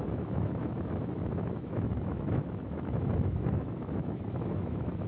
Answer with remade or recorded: remade